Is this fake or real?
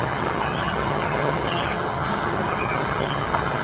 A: fake